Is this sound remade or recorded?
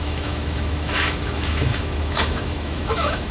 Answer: remade